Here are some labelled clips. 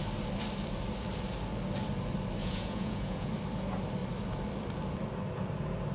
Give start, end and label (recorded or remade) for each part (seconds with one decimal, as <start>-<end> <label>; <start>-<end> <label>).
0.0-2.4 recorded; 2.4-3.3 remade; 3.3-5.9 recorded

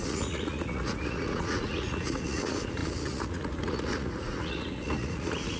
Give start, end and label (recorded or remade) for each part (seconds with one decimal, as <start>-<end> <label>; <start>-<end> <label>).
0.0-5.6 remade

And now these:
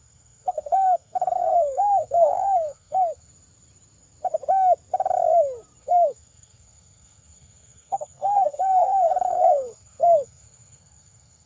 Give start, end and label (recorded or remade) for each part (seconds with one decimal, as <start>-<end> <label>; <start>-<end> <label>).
0.0-3.3 remade; 3.3-5.8 recorded; 5.8-11.5 remade